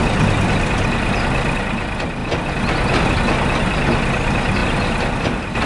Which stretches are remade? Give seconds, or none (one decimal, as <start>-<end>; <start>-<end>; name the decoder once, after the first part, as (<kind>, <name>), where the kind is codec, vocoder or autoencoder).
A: none